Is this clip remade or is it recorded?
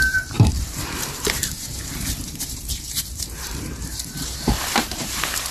remade